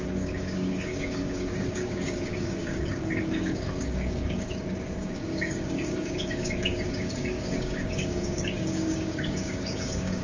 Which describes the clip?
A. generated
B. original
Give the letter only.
A